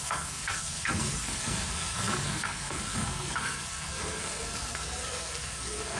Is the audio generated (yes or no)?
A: yes